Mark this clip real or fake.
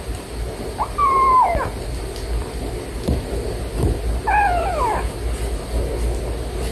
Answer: real